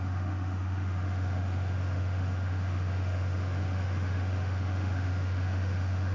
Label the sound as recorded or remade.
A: remade